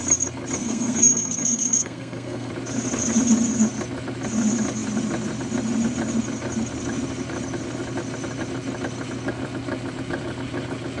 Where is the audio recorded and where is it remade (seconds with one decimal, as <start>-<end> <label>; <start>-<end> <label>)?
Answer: 0.0-0.6 recorded; 0.6-2.5 remade; 2.5-11.0 recorded